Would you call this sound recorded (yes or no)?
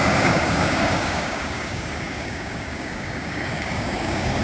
no